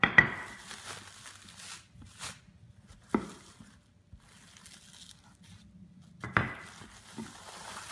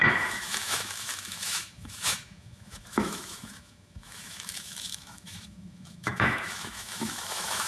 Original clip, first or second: first